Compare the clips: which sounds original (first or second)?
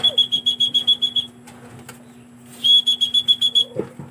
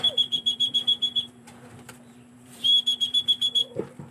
first